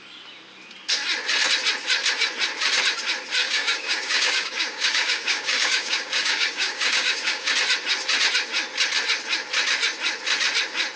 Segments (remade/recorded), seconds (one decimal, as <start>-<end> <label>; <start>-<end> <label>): 0.0-3.4 recorded; 3.4-7.5 remade; 7.5-11.0 recorded

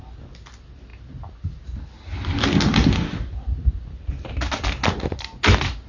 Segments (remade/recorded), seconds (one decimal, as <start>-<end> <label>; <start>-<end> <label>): 0.0-5.9 recorded

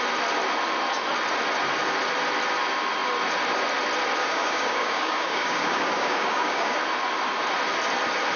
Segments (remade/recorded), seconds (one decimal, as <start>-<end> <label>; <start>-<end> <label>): 0.0-4.2 recorded; 4.2-6.8 remade; 6.8-8.4 recorded

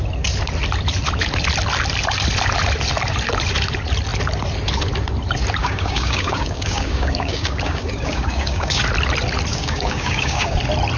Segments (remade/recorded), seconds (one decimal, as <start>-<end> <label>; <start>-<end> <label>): 0.0-5.6 recorded; 5.6-8.8 remade; 8.8-9.5 recorded; 9.5-10.6 remade; 10.6-11.0 recorded

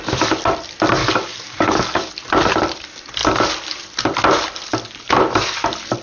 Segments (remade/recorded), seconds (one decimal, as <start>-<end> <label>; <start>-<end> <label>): 0.0-1.0 recorded; 1.0-2.1 remade; 2.1-6.0 recorded

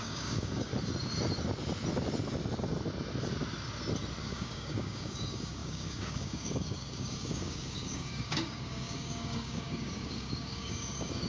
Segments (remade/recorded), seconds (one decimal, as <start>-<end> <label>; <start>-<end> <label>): 0.0-0.7 remade; 0.7-4.2 recorded; 4.2-11.3 remade

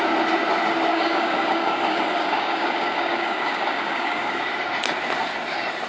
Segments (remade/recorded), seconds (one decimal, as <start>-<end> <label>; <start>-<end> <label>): 0.0-0.9 recorded; 0.9-4.4 remade; 4.4-5.9 recorded